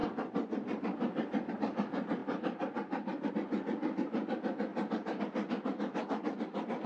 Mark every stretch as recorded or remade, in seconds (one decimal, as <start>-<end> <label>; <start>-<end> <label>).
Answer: 0.0-6.9 recorded